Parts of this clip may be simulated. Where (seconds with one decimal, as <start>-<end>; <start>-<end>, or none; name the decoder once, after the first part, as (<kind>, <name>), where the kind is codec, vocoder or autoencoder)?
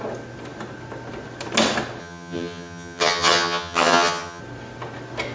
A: 2.0-4.4 (vocoder, HiFi-GAN)